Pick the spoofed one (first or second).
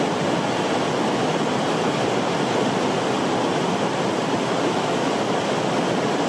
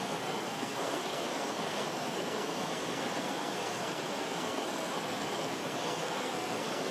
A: second